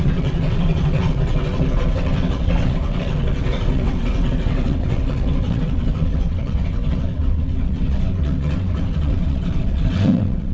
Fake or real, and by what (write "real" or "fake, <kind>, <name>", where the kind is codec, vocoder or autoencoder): fake, vocoder, WaveNeXt